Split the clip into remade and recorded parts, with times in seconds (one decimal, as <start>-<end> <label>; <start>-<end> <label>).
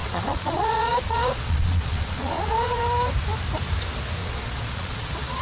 0.0-2.8 remade; 2.8-4.2 recorded; 4.2-5.4 remade